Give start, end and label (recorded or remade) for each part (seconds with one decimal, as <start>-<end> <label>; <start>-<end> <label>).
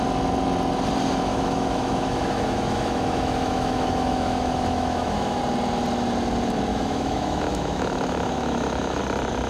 0.0-1.3 recorded; 1.3-5.4 remade; 5.4-6.7 recorded; 6.7-9.0 remade; 9.0-9.5 recorded